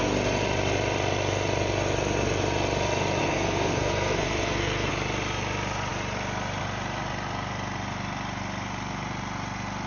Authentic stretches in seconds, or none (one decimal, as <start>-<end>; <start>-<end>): 0.0-3.2; 4.9-9.9